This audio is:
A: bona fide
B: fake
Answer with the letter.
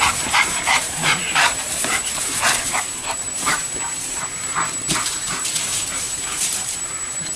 B